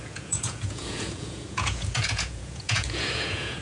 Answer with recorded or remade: remade